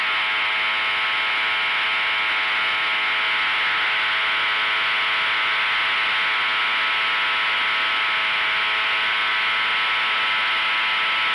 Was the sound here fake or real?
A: real